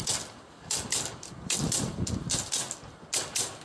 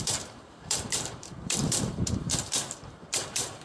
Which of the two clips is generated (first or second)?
second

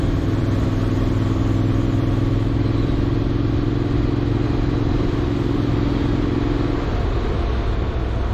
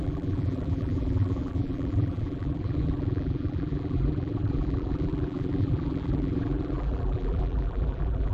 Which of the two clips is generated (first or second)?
second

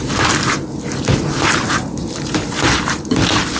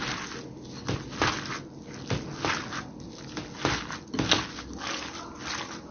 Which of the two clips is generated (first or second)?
first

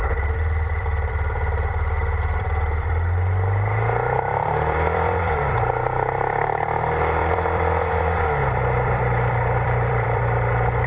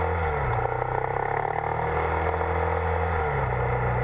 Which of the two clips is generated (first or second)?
first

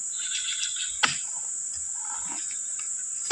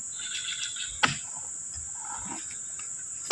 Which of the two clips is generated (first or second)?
first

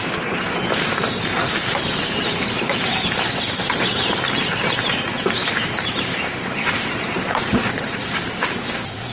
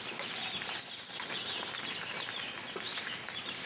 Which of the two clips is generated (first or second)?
first